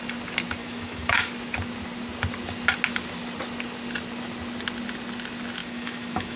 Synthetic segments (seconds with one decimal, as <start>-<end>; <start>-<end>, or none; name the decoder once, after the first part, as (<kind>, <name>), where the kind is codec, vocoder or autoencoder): 0.6-1.3 (autoencoder, DAC-VAE); 5.6-6.4

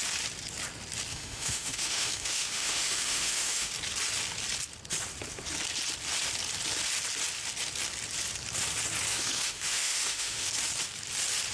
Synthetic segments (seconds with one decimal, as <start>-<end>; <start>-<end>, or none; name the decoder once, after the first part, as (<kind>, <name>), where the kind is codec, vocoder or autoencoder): 1.1-3.7 (autoencoder, DAC-VAE); 9.1-10.5

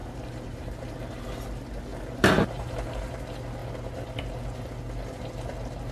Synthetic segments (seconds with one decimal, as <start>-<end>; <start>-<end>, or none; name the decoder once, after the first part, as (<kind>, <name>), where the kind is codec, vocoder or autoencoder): 0.0-1.2 (vocoder, BigVGAN v2); 1.9-3.2

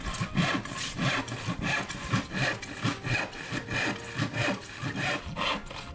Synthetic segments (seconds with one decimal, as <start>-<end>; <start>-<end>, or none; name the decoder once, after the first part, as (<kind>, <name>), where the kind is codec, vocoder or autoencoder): none

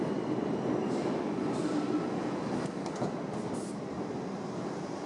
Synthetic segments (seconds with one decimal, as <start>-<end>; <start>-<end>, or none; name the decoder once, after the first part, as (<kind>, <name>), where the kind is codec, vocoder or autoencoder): none

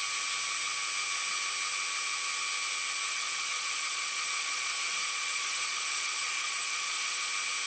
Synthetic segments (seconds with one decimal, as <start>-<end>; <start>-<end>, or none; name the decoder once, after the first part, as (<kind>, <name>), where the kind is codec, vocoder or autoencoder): 3.1-7.2 (vocoder, Vocos)